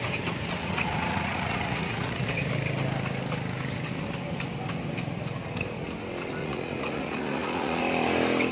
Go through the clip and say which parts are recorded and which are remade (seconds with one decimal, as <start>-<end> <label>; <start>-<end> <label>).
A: 0.0-0.6 recorded; 0.6-2.5 remade; 2.5-6.4 recorded; 6.4-7.8 remade; 7.8-8.5 recorded